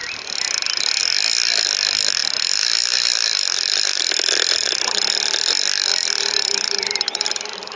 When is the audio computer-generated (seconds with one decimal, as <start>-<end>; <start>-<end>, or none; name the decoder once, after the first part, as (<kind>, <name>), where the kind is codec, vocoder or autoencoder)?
2.2-4.1 (vocoder, BigVGAN v2); 5.9-7.8